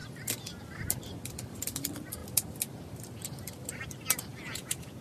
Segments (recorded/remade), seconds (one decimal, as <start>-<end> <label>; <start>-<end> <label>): 0.0-4.3 recorded; 4.3-5.0 remade